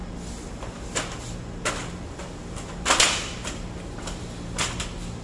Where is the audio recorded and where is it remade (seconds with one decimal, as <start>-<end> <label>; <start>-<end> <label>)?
0.0-5.2 recorded